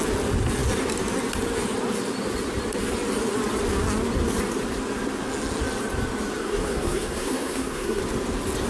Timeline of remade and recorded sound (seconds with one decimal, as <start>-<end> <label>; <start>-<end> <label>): 0.0-6.4 recorded; 6.4-8.0 remade; 8.0-8.7 recorded